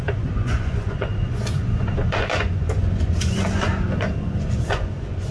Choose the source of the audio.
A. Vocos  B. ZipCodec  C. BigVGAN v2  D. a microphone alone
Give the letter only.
A